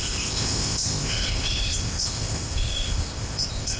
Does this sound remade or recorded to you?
remade